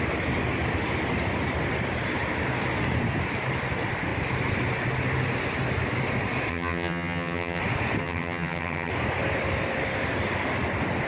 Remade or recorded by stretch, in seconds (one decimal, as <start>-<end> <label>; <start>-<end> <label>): 0.0-6.5 recorded; 6.5-7.6 remade; 7.6-8.0 recorded; 8.0-8.9 remade; 8.9-11.1 recorded